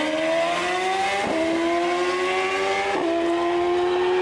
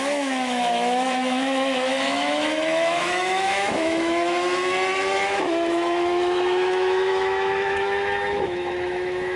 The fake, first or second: second